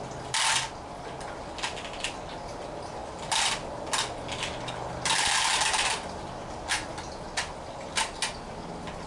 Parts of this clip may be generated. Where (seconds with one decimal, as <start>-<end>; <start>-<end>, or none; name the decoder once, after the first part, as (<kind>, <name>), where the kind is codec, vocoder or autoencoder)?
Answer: none